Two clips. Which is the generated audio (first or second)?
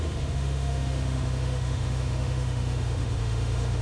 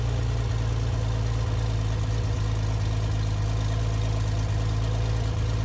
first